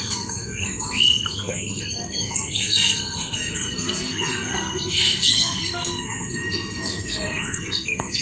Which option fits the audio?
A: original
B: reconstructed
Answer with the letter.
B